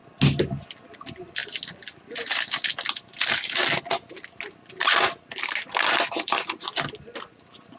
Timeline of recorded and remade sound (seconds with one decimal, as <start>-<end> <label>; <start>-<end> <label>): 0.0-7.8 recorded